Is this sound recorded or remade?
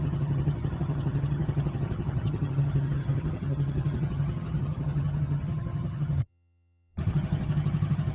remade